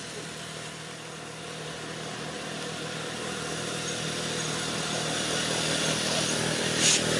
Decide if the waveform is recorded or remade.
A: recorded